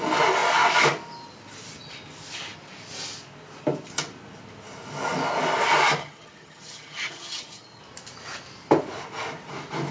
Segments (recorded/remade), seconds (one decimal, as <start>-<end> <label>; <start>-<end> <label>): 0.0-6.0 recorded; 6.0-7.8 remade; 7.8-9.9 recorded